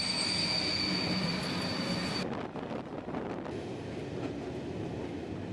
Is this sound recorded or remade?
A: recorded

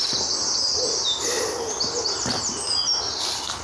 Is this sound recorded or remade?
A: recorded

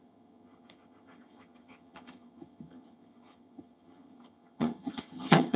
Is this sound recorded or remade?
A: remade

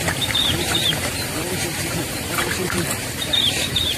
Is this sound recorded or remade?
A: remade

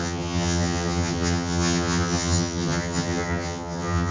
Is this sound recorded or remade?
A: remade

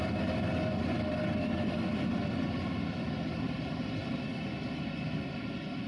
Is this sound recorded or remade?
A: recorded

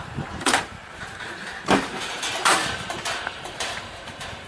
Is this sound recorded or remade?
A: remade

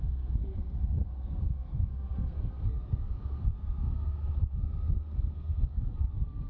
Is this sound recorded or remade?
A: remade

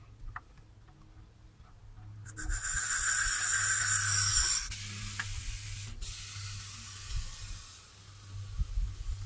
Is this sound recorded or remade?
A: recorded